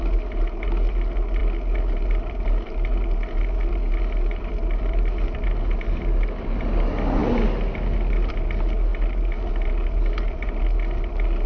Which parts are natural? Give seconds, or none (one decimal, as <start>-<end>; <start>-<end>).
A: 0.0-11.5